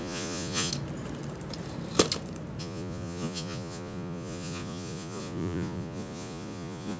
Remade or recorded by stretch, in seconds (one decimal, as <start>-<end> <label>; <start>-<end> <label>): 0.0-0.7 remade; 0.7-2.6 recorded; 2.6-7.0 remade